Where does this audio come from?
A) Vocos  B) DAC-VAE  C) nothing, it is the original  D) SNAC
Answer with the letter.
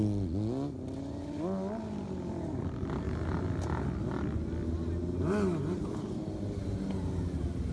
C